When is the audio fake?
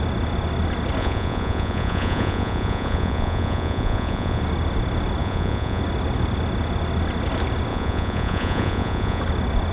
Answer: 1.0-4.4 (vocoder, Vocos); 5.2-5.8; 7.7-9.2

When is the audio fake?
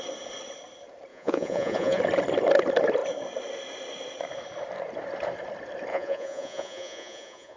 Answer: 1.1-2.0 (vocoder, Vocos); 5.9-7.6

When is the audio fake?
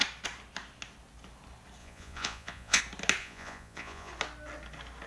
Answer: 1.8-2.8 (vocoder, Vocos); 3.2-4.1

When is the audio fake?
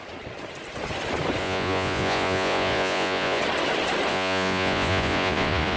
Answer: 1.4-3.4 (vocoder, Vocos); 4.1-5.8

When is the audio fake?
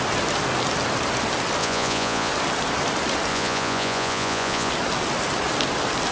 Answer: 1.6-2.3 (vocoder, Vocos); 3.3-4.7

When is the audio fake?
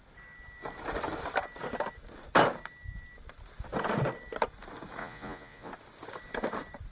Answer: 5.0-5.7 (vocoder, Vocos)